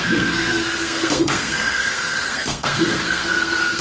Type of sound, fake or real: fake